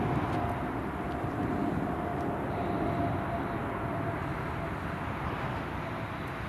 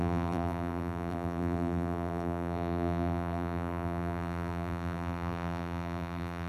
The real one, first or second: first